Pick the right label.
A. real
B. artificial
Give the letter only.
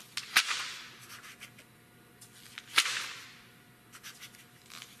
A